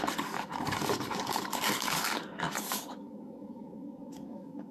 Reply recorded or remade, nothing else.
remade